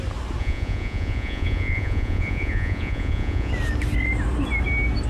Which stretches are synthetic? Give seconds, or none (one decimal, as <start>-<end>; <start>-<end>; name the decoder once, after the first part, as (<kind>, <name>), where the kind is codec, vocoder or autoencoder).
0.4-3.5 (vocoder, Vocos)